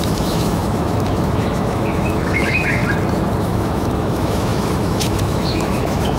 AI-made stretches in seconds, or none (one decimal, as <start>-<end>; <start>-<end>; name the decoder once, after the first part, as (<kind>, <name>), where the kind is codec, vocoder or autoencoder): 0.0-2.8 (autoencoder, DAC-VAE); 3.4-6.2

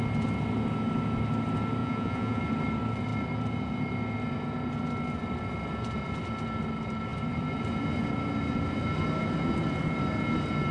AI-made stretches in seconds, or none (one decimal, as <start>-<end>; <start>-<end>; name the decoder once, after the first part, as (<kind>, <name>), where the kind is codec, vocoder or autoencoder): 1.8-2.4 (vocoder, Vocos)

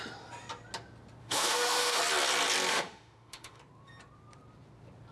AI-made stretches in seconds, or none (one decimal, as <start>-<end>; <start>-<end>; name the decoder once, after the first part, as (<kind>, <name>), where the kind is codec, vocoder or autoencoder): 1.2-2.0 (autoencoder, DAC-VAE); 2.7-3.6

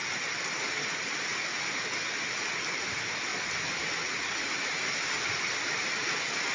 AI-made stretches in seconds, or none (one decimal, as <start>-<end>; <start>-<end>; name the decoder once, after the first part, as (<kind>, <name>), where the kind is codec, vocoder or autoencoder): none

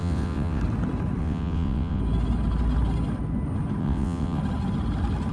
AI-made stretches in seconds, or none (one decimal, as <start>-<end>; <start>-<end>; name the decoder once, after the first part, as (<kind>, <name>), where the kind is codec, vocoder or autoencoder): 0.0-0.6 (vocoder, WaveNeXt); 1.2-2.0; 3.8-4.4

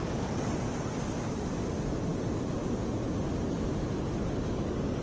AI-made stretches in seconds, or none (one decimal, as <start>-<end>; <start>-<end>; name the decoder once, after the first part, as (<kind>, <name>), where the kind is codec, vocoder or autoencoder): none

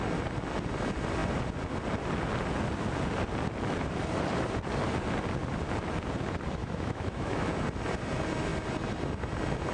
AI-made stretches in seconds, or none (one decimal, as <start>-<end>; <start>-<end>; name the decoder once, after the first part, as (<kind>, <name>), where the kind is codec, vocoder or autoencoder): 6.6-7.5 (autoencoder, DAC-VAE)

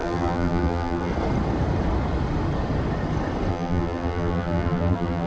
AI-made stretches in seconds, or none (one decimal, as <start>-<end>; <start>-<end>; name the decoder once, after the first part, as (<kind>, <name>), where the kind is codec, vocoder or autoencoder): 0.0-1.1 (vocoder, BigVGAN v2); 3.5-5.3